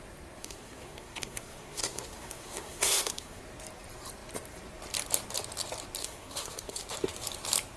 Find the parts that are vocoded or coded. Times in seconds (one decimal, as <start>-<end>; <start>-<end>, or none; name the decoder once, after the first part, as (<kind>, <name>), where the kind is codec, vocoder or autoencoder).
0.4-3.4 (codec, SNAC); 6.0-6.8